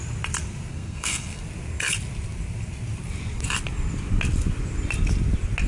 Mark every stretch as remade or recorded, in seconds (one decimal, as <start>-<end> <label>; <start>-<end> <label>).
0.0-0.7 recorded; 0.7-1.4 remade; 1.4-5.7 recorded

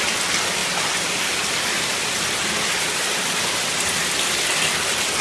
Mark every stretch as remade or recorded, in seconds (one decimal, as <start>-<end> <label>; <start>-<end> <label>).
0.0-5.2 recorded

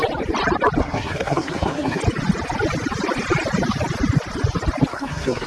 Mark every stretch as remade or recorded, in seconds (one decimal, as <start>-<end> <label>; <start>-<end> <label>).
0.0-0.8 recorded; 0.8-2.0 remade; 2.0-4.9 recorded; 4.9-5.5 remade

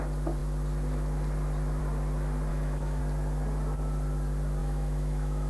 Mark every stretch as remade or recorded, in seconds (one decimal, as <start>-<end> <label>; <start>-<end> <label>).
0.0-2.5 recorded; 2.5-3.0 remade; 3.0-4.6 recorded; 4.6-5.5 remade

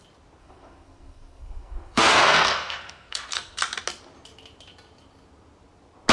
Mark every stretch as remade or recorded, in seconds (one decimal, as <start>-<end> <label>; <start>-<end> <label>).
0.0-0.4 recorded; 0.4-3.6 remade; 3.6-6.1 recorded